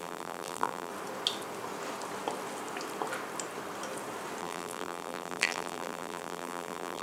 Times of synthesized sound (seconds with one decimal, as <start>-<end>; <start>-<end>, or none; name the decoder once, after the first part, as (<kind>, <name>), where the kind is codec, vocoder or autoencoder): 0.0-0.9 (vocoder, BigVGAN v2); 4.4-7.0